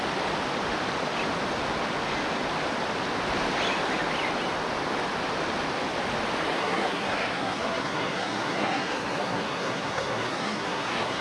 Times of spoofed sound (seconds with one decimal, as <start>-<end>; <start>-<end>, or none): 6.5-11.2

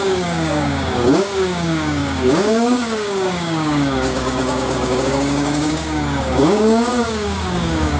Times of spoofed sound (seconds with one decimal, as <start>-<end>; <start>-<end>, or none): 0.0-8.0

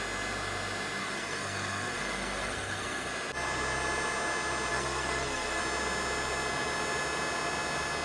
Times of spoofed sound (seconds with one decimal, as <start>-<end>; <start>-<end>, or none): 1.0-3.1; 4.7-5.6

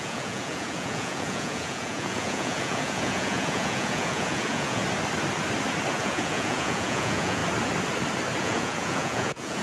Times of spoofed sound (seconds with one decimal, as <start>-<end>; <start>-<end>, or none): 0.0-4.8; 5.9-7.4; 8.4-9.6